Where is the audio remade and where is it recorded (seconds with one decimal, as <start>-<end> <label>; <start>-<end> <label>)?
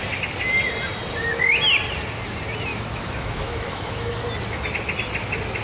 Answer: 0.0-2.7 recorded; 2.7-4.2 remade; 4.2-5.6 recorded